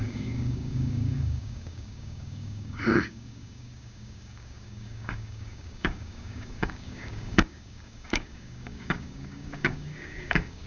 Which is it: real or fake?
fake